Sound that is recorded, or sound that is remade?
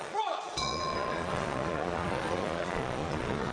remade